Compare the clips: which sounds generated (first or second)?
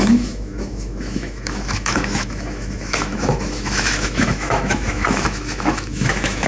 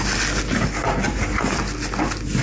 first